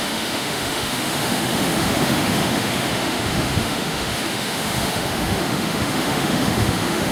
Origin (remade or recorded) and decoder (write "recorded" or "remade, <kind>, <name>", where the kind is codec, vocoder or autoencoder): remade, autoencoder, DAC-VAE